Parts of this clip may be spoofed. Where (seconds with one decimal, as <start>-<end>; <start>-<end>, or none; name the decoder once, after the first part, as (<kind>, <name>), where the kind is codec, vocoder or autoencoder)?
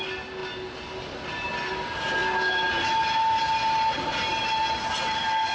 none